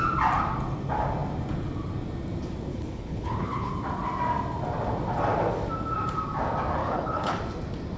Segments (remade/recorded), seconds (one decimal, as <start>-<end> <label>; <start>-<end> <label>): 0.0-2.7 recorded; 2.7-3.7 remade; 3.7-6.8 recorded; 6.8-7.4 remade; 7.4-8.0 recorded